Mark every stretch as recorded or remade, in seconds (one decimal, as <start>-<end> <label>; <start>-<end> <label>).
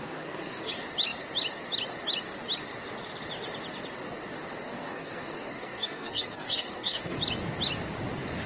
0.0-0.7 remade; 0.7-4.7 recorded; 4.7-7.2 remade; 7.2-8.5 recorded